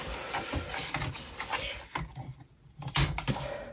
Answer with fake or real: real